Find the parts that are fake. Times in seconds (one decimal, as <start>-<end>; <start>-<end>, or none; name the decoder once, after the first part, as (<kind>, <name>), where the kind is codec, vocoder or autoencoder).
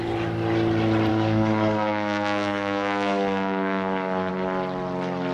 1.1-4.3 (codec, DAC)